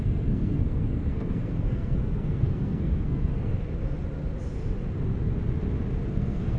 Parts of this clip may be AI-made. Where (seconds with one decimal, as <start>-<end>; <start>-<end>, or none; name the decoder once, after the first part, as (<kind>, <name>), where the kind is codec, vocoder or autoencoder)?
0.0-3.5 (codec, SNAC); 6.1-6.6